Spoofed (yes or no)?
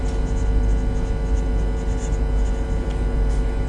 no